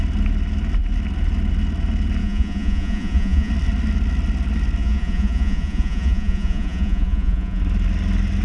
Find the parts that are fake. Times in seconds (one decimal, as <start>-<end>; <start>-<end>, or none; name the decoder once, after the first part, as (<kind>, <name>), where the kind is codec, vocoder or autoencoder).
2.2-3.5 (vocoder, Vocos); 4.8-7.6